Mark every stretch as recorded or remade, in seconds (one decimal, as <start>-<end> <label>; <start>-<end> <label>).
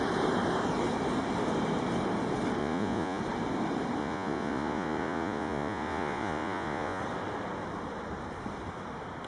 0.0-2.6 recorded; 2.6-3.2 remade; 3.2-4.0 recorded; 4.0-7.0 remade; 7.0-9.3 recorded